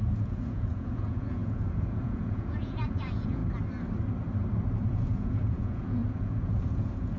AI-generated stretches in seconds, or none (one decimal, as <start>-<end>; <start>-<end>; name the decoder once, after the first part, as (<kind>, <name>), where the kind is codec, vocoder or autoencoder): 0.0-3.4 (vocoder, Vocos); 4.9-7.2